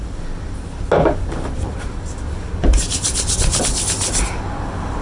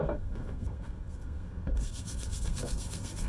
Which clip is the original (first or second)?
first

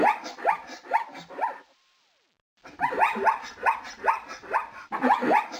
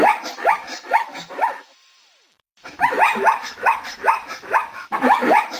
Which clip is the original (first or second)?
first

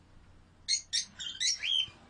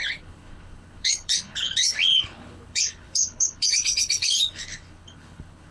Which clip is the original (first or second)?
first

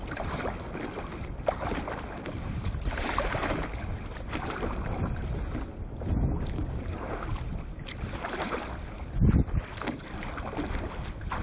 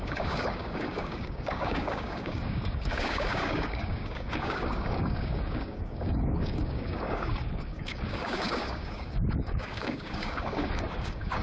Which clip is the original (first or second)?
first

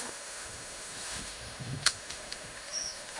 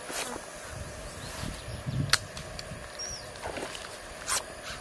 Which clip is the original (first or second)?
second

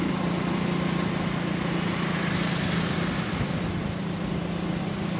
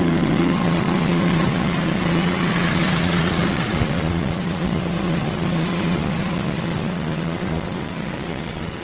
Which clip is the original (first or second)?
first